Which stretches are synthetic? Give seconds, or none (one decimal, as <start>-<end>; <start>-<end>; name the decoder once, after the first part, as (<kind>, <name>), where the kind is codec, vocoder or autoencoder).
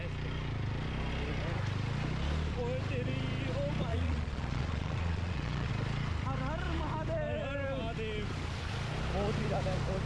3.9-5.7 (vocoder, Vocos)